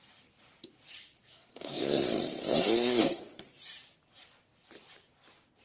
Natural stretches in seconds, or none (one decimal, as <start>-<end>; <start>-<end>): 0.0-1.3; 2.1-2.5; 3.2-5.6